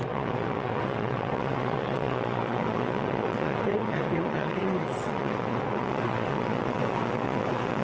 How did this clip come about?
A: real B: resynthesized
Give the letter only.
B